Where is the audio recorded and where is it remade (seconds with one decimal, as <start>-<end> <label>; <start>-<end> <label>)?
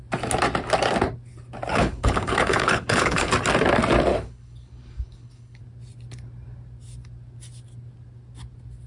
0.0-1.7 recorded; 1.7-3.3 remade; 3.3-4.1 recorded; 4.1-5.6 remade; 5.6-8.9 recorded